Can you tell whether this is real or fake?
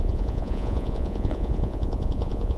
fake